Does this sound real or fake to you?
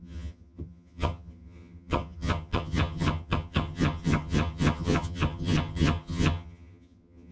fake